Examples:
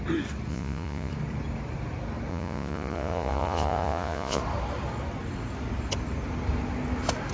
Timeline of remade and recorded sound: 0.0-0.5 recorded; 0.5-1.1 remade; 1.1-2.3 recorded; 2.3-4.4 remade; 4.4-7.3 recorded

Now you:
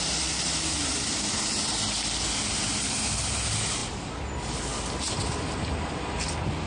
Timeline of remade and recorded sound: 0.0-6.7 recorded

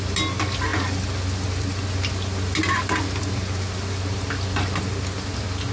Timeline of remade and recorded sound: 0.0-5.7 recorded

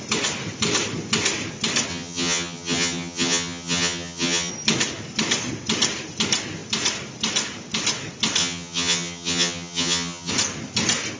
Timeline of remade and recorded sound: 0.0-1.9 recorded; 1.9-4.5 remade; 4.5-8.4 recorded; 8.4-10.3 remade; 10.3-11.2 recorded

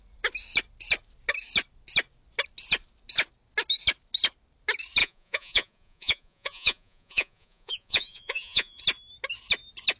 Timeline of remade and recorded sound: 0.0-5.0 recorded; 5.0-8.8 remade; 8.8-10.0 recorded